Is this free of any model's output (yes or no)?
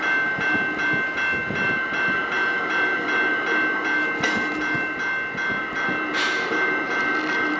yes